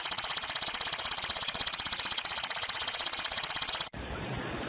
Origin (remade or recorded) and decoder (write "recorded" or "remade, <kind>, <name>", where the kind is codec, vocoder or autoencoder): remade, vocoder, Vocos